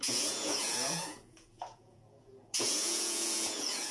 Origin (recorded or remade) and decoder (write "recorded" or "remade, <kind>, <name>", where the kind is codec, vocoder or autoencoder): remade, vocoder, Vocos